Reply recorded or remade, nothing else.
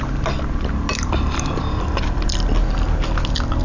recorded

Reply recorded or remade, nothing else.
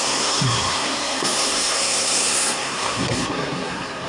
remade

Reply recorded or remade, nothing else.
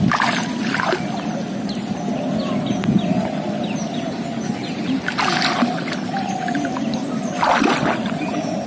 recorded